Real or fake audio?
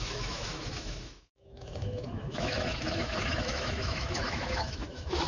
fake